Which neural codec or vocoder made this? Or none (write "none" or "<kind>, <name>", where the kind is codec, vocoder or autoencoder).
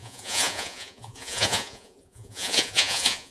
vocoder, Vocos